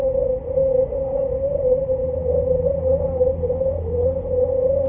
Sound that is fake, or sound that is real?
real